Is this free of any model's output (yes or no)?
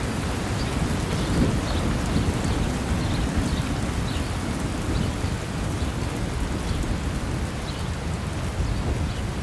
yes